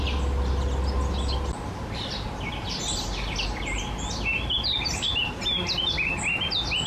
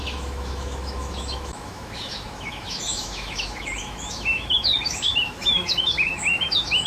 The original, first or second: first